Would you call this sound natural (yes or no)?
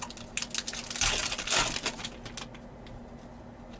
yes